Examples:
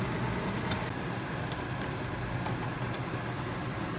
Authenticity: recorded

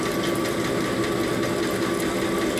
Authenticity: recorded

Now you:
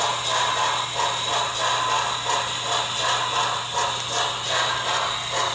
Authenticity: recorded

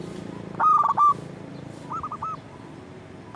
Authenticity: recorded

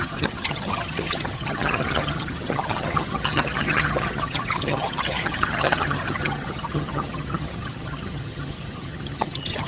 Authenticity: remade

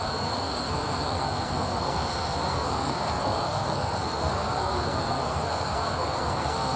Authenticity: remade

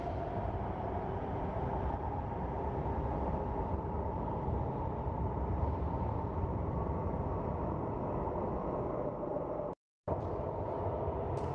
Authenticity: recorded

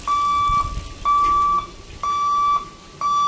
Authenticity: recorded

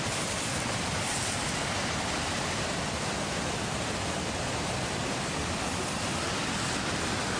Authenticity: remade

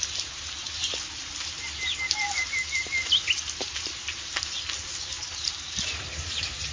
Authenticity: remade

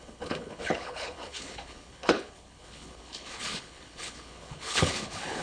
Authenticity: remade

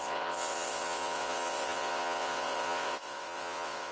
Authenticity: remade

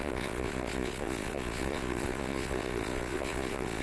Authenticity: remade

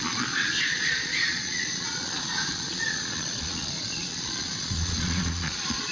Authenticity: remade